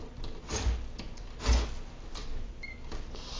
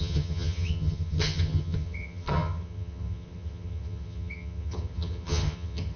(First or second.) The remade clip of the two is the second